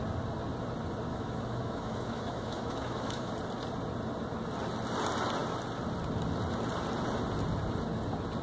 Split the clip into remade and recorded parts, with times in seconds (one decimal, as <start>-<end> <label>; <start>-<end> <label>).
0.0-1.1 recorded; 1.1-3.3 remade; 3.3-8.4 recorded